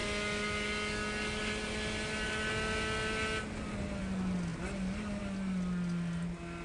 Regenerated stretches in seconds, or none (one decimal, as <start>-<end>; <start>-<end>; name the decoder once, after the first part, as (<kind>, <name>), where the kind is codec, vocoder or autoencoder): none

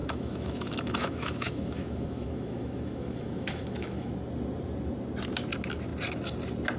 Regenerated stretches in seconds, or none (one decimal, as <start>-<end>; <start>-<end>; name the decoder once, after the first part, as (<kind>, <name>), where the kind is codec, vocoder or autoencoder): 0.0-4.1 (autoencoder, DAC-VAE)

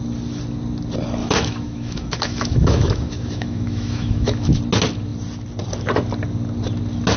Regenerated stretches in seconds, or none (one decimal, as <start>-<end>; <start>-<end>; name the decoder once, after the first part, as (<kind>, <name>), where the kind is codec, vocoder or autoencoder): 1.2-4.6 (autoencoder, DAC-VAE)

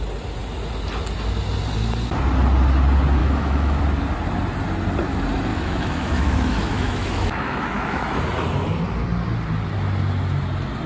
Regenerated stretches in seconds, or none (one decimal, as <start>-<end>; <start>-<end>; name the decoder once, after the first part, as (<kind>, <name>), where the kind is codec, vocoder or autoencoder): 3.2-3.8 (autoencoder, DAC-VAE); 5.5-8.2

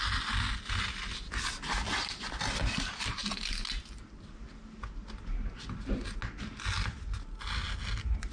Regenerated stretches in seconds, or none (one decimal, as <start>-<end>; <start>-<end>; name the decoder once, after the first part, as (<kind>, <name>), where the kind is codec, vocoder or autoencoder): none